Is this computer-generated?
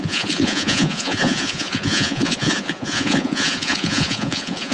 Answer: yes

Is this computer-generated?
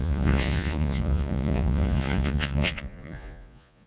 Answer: yes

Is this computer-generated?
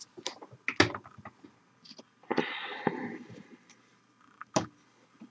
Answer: no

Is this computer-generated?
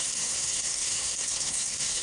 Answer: yes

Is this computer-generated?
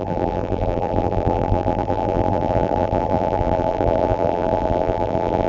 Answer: yes